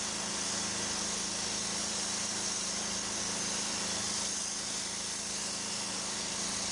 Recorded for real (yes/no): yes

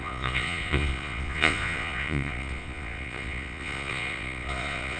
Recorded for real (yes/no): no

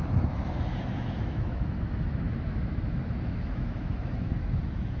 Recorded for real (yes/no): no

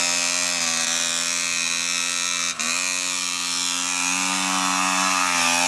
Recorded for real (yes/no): yes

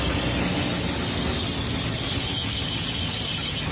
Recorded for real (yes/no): yes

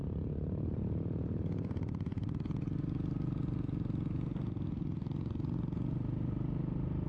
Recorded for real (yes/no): yes